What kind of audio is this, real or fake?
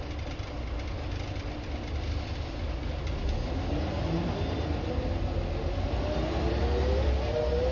real